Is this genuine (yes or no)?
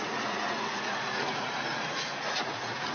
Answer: no